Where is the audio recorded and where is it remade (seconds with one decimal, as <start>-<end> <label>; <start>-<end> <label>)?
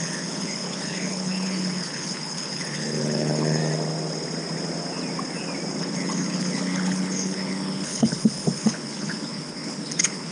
0.0-3.6 remade; 3.6-5.8 recorded; 5.8-10.3 remade